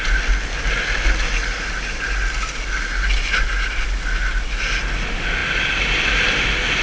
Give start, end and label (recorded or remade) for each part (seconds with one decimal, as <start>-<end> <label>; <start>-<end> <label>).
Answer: 0.0-6.8 recorded